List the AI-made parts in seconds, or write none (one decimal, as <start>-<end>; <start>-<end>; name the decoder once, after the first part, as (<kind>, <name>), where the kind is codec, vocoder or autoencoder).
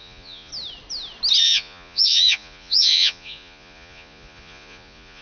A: 0.0-0.5 (vocoder, Vocos); 1.4-5.2